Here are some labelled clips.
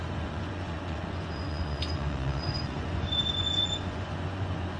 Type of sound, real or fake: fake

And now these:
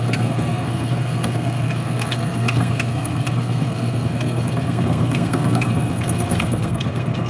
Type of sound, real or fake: fake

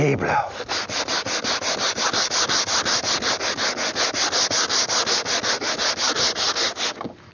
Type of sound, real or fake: real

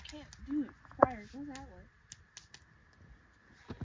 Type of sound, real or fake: real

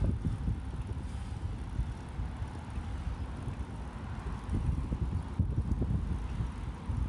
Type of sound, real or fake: real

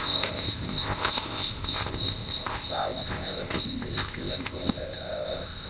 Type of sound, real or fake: fake